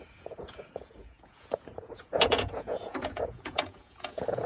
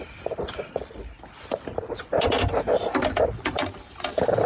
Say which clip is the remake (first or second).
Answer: first